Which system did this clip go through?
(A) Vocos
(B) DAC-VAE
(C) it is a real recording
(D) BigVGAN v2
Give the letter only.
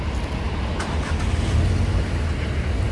C